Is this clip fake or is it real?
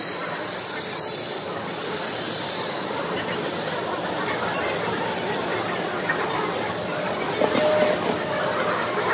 real